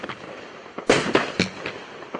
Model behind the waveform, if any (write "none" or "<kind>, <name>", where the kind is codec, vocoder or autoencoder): vocoder, BigVGAN v2